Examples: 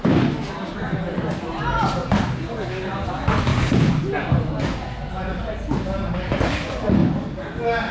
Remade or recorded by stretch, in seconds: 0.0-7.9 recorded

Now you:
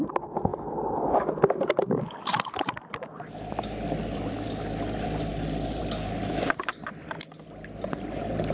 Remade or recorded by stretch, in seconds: 0.0-8.5 recorded

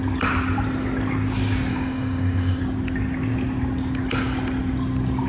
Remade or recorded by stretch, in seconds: 0.0-1.7 recorded; 1.7-2.6 remade; 2.6-5.3 recorded

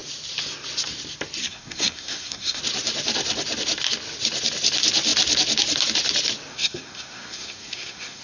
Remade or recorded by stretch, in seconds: 0.0-1.4 recorded; 1.4-2.6 remade; 2.6-6.5 recorded; 6.5-8.2 remade

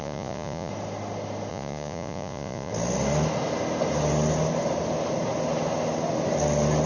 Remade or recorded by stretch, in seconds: 0.0-0.7 remade; 0.7-1.5 recorded; 1.5-2.7 remade; 2.7-6.9 recorded